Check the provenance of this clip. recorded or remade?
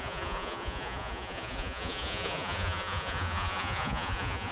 remade